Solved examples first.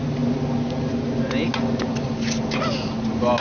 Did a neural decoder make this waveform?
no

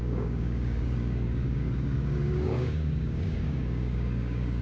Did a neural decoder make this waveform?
yes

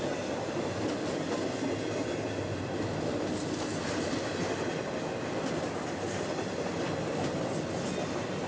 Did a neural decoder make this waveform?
no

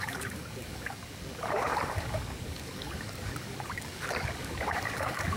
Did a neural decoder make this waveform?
yes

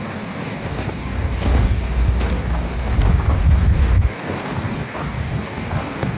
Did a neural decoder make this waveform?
yes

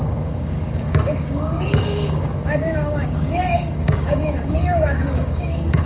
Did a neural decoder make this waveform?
yes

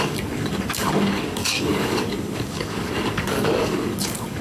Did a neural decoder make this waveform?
yes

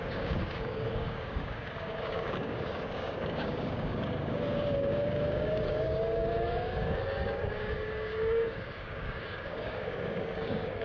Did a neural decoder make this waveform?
yes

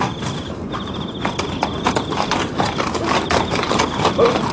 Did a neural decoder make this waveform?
no